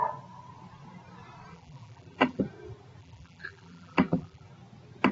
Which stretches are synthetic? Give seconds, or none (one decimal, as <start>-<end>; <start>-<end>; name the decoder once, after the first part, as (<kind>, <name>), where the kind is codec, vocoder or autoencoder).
1.5-2.4 (vocoder, BigVGAN v2); 3.0-4.5